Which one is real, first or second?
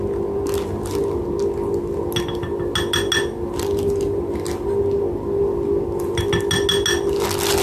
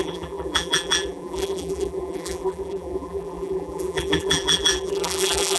first